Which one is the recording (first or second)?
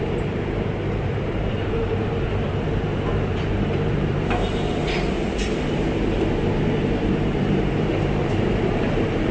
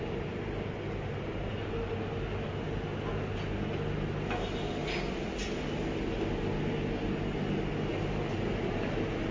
second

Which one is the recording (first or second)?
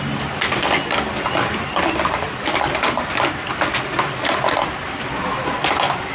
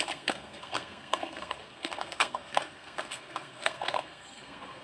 first